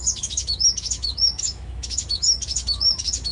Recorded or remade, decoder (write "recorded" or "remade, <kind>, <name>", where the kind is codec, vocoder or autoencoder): remade, autoencoder, DAC-VAE